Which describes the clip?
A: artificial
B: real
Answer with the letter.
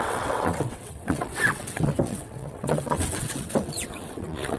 A